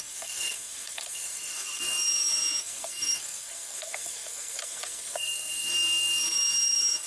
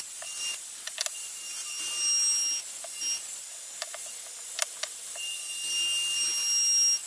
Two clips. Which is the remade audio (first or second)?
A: first